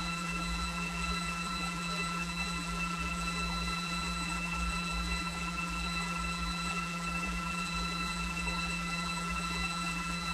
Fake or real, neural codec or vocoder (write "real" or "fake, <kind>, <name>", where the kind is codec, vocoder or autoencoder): fake, vocoder, BigVGAN v2